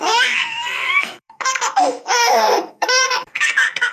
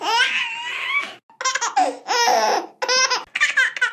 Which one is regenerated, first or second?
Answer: first